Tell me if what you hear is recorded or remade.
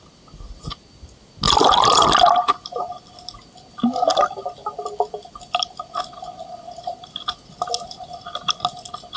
recorded